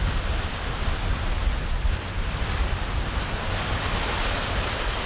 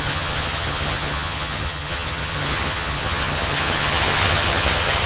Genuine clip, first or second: first